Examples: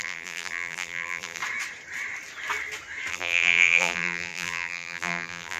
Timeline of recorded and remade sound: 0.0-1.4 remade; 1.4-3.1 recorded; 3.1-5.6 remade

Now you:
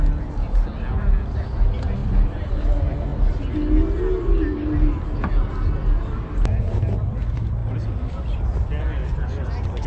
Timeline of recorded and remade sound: 0.0-2.0 recorded; 2.0-2.5 remade; 2.5-9.9 recorded

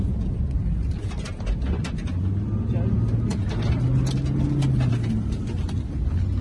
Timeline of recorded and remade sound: 0.0-6.4 recorded

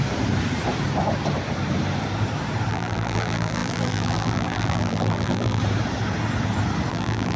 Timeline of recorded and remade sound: 0.0-2.7 recorded; 2.7-5.6 remade; 5.6-6.9 recorded; 6.9-7.4 remade